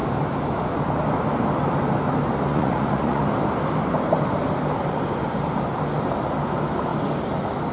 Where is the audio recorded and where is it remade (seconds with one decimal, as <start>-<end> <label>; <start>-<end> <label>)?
0.0-2.5 recorded; 2.5-3.2 remade; 3.2-7.7 recorded